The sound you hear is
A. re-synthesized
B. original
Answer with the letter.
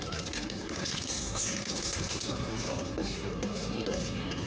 A